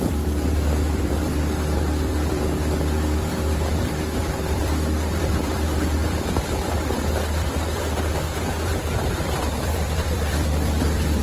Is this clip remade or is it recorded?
remade